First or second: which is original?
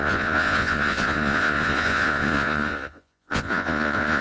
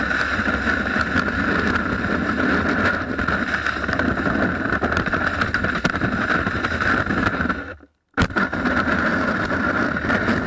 second